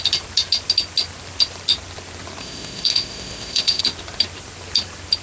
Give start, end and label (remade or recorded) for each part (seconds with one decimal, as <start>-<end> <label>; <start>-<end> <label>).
0.0-2.4 recorded; 2.4-3.8 remade; 3.8-5.2 recorded